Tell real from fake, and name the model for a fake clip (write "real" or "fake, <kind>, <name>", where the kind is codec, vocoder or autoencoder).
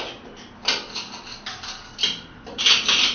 real